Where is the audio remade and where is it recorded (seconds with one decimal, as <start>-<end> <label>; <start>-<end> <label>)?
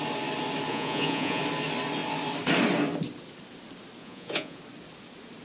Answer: 0.0-0.7 recorded; 0.7-1.4 remade; 1.4-4.0 recorded; 4.0-4.6 remade; 4.6-5.4 recorded